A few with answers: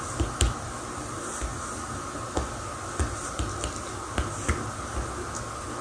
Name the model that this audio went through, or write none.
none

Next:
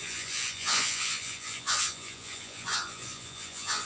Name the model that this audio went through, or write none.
vocoder, Vocos